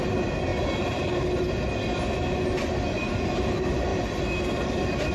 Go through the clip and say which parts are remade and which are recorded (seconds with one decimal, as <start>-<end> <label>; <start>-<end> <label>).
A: 0.0-5.1 recorded